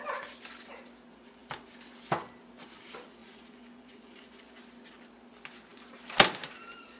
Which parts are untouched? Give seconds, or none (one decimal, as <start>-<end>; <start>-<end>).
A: 0.0-3.2; 4.4-7.0